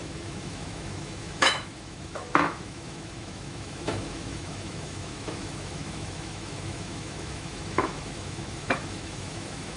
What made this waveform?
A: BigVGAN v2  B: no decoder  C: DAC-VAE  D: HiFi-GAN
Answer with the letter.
C